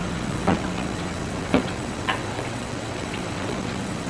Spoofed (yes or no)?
yes